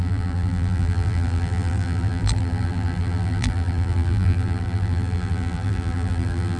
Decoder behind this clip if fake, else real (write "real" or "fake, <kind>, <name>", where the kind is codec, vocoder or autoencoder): fake, vocoder, BigVGAN v2